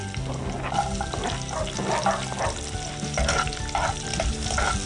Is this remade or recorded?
recorded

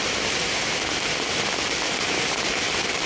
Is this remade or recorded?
recorded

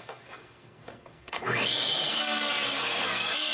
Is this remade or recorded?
remade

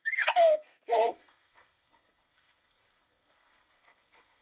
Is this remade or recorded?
remade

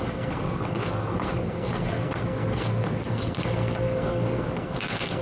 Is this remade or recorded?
remade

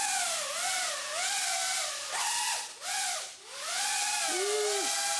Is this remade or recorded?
recorded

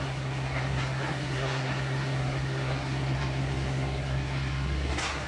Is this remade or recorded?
remade